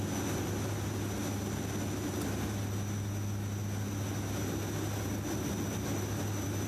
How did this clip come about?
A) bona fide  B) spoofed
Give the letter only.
A